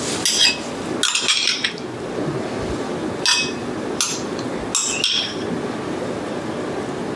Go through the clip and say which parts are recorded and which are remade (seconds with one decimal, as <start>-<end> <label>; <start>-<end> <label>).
0.0-7.2 recorded